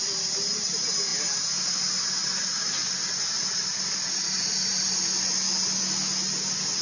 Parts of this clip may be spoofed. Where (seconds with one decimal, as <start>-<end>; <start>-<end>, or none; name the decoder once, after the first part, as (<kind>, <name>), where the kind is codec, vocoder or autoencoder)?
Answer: none